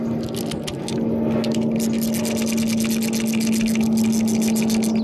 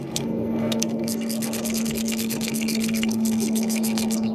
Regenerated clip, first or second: second